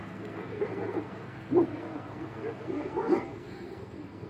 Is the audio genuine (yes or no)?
no